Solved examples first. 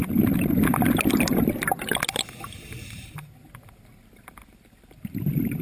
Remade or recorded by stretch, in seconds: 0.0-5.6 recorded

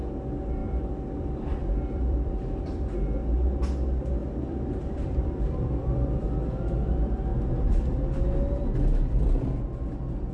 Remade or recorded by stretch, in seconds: 0.0-0.6 recorded; 0.6-2.3 remade; 2.3-4.2 recorded; 4.2-6.3 remade; 6.3-7.3 recorded; 7.3-7.8 remade; 7.8-10.3 recorded

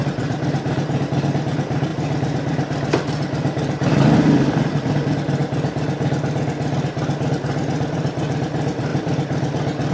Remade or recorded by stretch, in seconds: 0.0-5.4 remade; 5.4-7.3 recorded; 7.3-9.9 remade

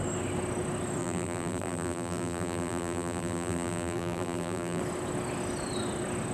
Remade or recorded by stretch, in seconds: 0.0-1.0 recorded; 1.0-4.8 remade; 4.8-6.3 recorded